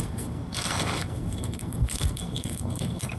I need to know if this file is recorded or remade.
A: remade